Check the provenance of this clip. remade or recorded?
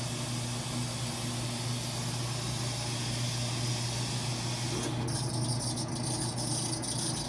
recorded